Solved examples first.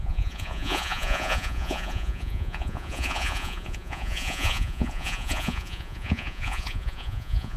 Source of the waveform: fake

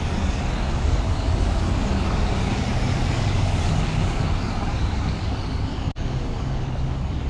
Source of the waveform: fake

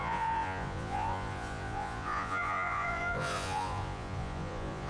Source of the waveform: fake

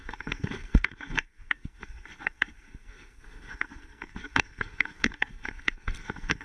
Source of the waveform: fake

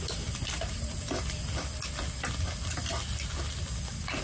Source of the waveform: real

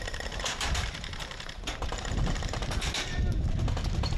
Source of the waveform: fake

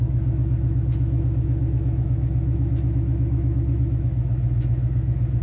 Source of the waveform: fake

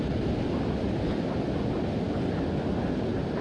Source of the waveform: real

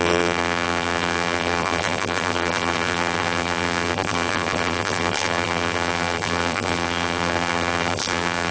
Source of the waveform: fake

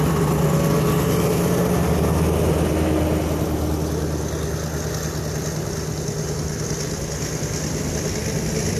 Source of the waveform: real